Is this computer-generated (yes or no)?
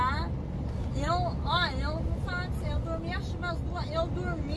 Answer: no